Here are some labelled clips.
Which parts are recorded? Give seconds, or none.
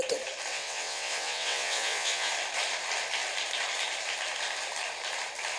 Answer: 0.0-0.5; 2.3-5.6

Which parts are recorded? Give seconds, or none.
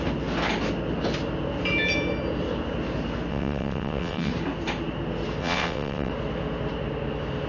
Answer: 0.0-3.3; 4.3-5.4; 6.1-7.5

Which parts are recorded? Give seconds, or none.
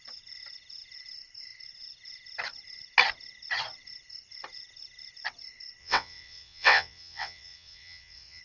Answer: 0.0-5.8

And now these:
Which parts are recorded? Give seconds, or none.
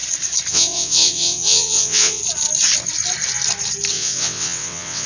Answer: 0.0-0.5; 2.2-3.9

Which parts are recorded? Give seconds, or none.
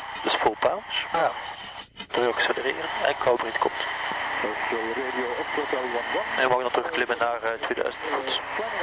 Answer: 0.0-1.2; 2.6-8.8